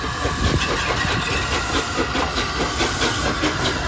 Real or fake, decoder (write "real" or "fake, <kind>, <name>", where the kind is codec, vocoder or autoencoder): real